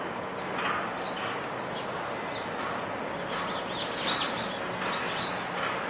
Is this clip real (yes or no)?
yes